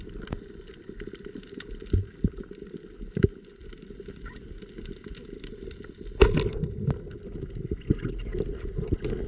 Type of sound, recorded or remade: recorded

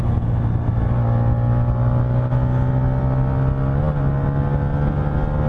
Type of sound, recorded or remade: recorded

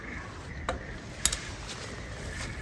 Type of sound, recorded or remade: recorded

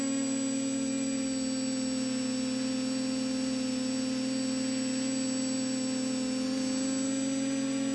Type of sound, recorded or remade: recorded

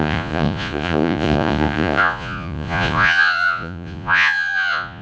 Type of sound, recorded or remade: remade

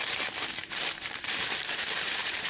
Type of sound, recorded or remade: remade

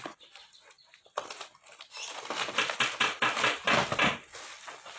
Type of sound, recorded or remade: recorded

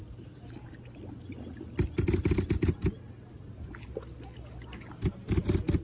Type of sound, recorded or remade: recorded